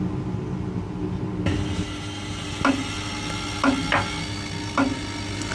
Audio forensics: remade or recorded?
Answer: remade